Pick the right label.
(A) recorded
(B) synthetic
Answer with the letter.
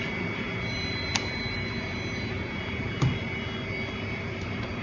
B